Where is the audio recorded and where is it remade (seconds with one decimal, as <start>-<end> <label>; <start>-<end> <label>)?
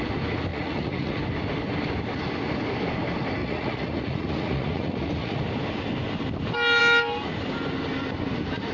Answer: 0.0-0.5 recorded; 0.5-1.2 remade; 1.2-3.4 recorded; 3.4-5.4 remade; 5.4-8.7 recorded